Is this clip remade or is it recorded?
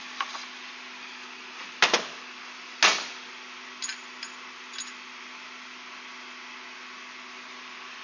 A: recorded